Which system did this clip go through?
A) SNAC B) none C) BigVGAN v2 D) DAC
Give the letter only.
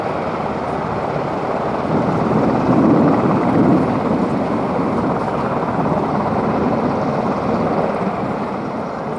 B